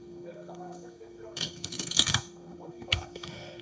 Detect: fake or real fake